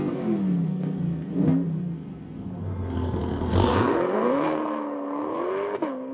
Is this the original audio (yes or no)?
no